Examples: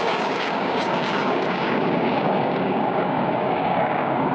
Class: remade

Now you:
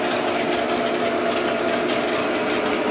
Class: recorded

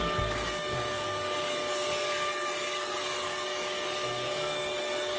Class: remade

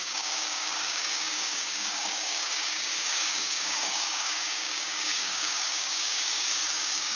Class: remade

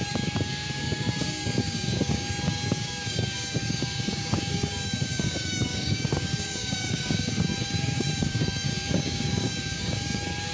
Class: remade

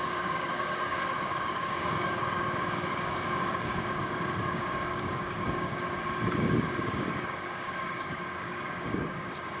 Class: remade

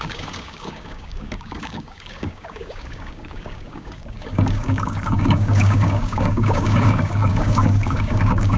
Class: remade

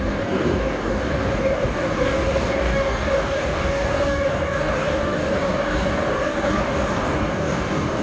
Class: remade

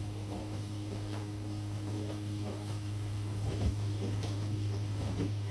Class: remade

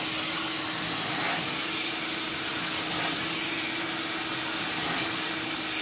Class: recorded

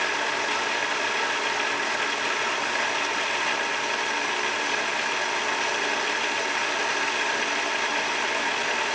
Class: recorded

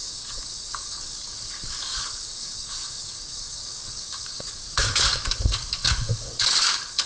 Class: remade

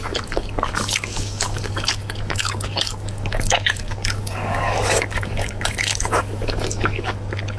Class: remade